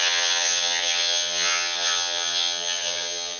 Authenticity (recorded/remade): remade